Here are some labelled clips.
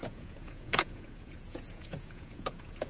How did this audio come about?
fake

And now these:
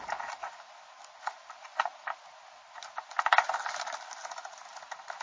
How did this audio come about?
real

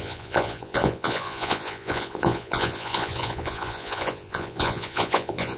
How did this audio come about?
fake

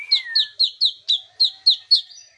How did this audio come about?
real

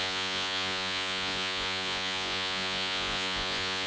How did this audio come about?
fake